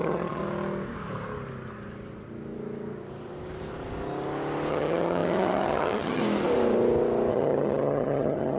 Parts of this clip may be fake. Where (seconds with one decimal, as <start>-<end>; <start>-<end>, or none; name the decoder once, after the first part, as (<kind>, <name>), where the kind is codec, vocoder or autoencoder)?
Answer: 0.0-0.4 (vocoder, HiFi-GAN); 4.7-6.2; 7.3-8.6